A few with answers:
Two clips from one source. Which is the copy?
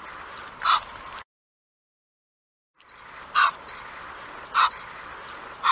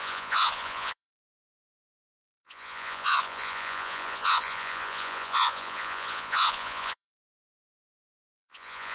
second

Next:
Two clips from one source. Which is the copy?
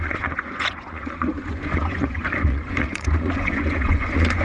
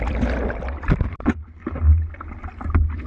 first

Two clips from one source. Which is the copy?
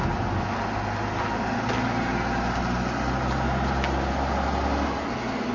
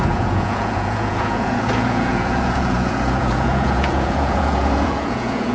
second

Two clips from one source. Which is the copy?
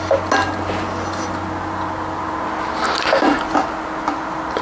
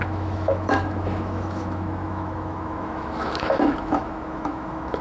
second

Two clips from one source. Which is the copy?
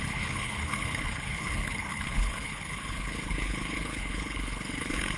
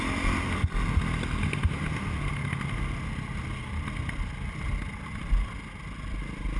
first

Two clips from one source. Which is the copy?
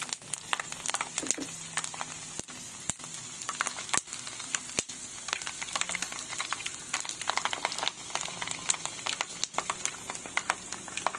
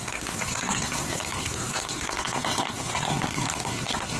second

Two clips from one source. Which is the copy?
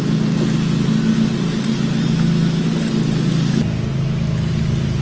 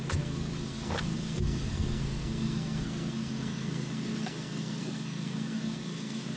second